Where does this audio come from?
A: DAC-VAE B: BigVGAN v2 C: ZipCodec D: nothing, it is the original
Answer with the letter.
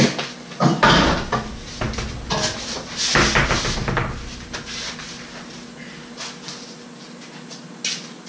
D